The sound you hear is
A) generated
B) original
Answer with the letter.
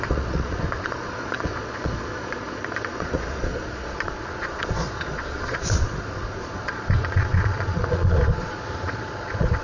A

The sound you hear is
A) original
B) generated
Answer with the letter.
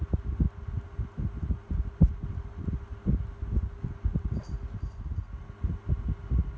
A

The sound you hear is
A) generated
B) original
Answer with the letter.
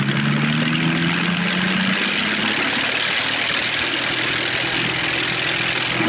B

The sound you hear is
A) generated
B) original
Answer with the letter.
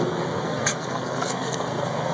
A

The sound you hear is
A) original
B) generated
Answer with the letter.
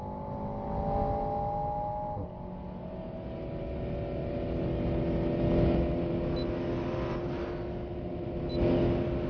A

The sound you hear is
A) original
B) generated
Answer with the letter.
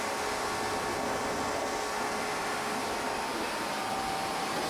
A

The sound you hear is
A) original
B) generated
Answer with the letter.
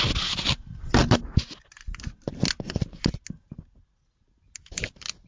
A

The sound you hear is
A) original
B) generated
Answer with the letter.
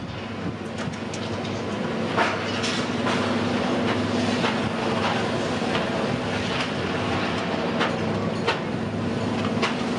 A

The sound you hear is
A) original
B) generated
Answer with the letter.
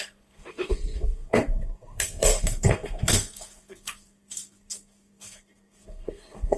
B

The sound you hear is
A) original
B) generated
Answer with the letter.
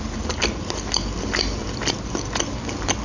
A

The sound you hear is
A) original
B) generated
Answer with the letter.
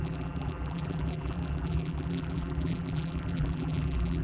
B